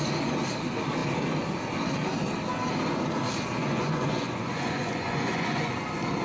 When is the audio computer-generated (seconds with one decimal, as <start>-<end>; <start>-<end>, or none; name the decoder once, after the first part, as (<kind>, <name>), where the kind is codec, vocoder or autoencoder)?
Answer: 3.6-5.7 (vocoder, Vocos)